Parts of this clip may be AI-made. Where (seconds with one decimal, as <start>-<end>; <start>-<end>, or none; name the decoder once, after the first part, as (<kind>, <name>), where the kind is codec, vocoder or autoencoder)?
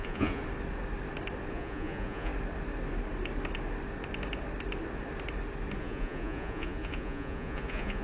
0.0-0.4 (vocoder, Vocos); 1.5-2.3; 5.8-8.0